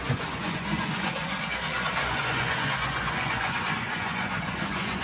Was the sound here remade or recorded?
remade